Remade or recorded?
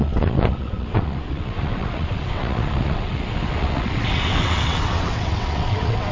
remade